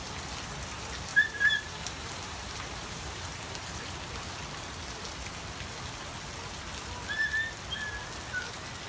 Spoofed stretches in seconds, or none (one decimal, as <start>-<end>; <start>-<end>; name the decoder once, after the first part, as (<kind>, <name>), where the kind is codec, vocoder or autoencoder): 1.1-4.4 (vocoder, BigVGAN v2)